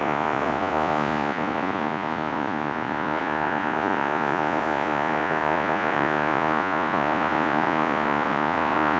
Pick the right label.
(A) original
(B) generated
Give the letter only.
B